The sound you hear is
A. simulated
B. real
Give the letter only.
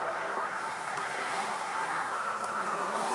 A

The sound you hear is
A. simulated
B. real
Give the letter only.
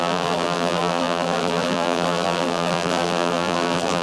A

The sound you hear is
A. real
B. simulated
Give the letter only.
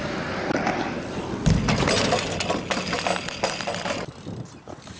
A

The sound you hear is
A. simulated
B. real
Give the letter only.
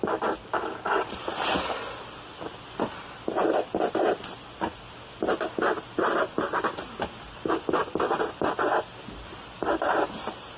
B